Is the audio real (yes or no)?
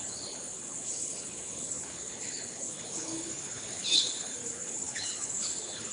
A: no